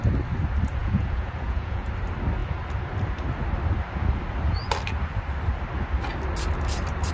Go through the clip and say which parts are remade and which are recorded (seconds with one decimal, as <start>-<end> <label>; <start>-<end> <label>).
0.0-0.8 recorded; 0.8-1.9 remade; 1.9-7.1 recorded